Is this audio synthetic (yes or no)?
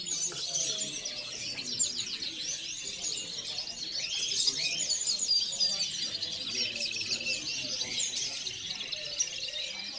no